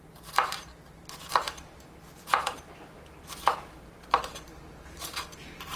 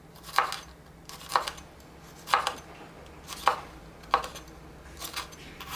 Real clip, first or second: second